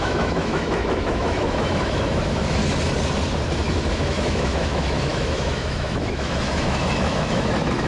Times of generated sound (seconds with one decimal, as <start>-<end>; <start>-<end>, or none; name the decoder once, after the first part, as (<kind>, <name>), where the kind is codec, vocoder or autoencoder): 0.0-2.6 (autoencoder, DAC-VAE); 3.9-7.9